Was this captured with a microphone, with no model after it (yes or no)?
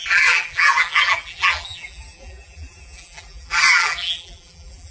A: no